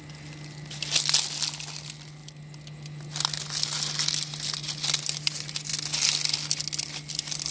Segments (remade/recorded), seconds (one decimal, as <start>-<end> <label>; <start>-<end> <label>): 0.0-7.5 recorded